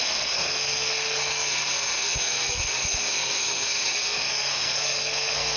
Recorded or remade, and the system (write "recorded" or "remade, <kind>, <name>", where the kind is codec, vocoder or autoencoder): remade, codec, SNAC